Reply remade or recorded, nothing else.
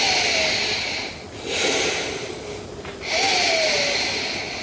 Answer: recorded